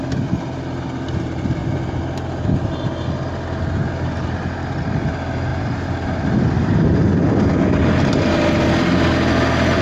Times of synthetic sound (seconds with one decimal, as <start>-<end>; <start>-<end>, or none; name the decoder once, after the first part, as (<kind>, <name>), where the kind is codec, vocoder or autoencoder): none